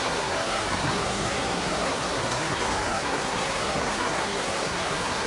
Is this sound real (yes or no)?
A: no